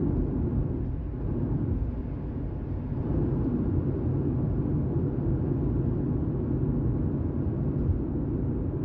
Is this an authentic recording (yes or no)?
yes